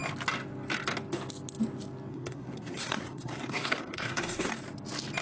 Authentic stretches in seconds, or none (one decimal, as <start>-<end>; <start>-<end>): 0.0-2.1; 4.5-5.2